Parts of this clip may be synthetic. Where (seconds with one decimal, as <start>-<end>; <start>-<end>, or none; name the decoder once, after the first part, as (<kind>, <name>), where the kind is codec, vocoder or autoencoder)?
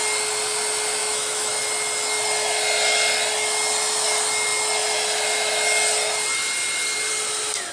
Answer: 1.0-1.6 (autoencoder, DAC-VAE)